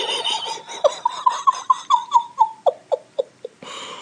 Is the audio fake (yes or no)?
no